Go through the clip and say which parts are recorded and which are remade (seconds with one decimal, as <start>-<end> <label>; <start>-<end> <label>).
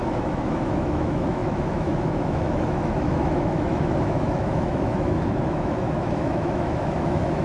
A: 0.0-7.4 remade